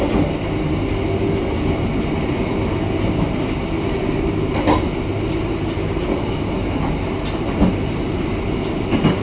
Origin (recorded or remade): recorded